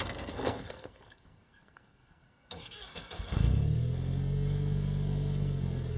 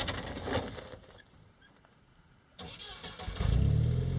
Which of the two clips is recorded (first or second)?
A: second